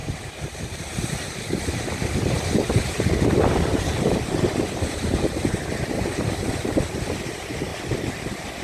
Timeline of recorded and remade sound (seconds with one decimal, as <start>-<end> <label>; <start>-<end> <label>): 0.0-7.7 remade; 7.7-8.6 recorded

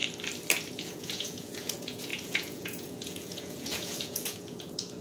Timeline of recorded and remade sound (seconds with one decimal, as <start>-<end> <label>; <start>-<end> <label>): 0.0-0.7 recorded; 0.7-5.0 remade

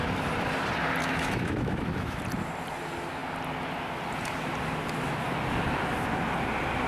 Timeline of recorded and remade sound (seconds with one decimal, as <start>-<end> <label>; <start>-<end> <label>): 0.0-1.0 recorded; 1.0-2.2 remade; 2.2-6.9 recorded

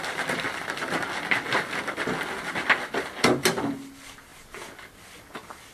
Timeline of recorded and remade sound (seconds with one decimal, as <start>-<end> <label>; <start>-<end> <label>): 0.0-5.7 recorded

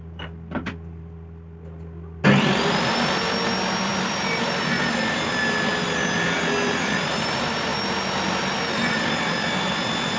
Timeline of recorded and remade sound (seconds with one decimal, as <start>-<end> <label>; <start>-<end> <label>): 0.0-10.2 recorded

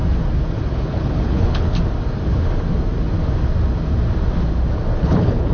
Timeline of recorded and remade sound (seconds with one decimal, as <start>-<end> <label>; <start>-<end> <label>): 0.0-0.7 recorded; 0.7-1.7 remade; 1.7-5.0 recorded; 5.0-5.5 remade

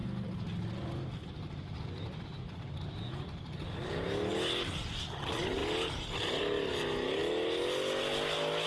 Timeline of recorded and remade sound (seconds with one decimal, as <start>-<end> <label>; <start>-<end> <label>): 0.0-8.7 recorded